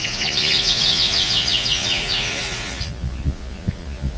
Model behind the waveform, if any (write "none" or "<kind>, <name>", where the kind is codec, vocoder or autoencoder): vocoder, Vocos